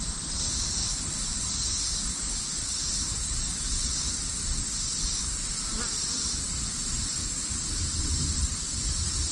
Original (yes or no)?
yes